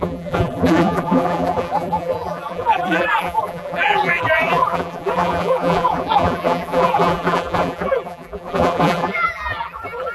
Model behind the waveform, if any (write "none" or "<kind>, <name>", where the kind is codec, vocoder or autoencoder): vocoder, BigVGAN v2